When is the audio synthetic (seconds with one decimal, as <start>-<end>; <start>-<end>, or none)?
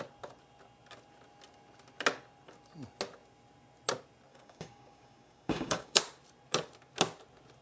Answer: 4.3-6.0